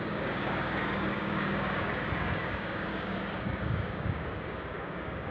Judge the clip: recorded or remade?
remade